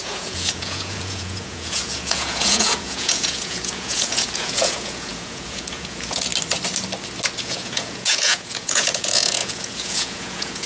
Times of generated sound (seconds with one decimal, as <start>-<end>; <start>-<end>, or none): 0.0-6.3; 7.4-10.7

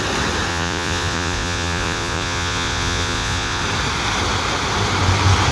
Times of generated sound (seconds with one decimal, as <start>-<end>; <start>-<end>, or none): 0.5-3.6

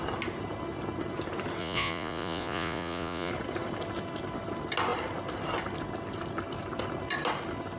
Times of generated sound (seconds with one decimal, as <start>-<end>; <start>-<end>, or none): 1.6-3.3